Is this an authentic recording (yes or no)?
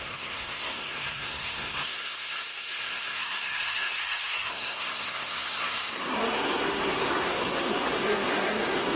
no